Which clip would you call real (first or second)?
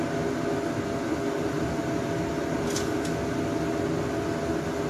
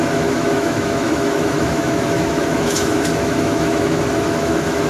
first